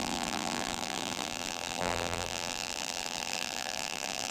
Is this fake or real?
fake